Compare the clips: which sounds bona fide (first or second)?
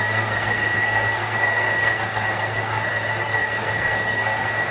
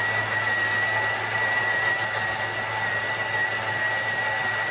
second